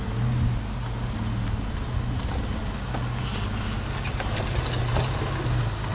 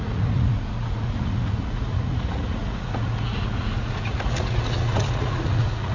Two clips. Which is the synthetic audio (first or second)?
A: second